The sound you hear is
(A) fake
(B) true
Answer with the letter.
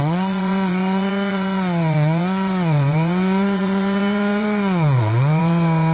A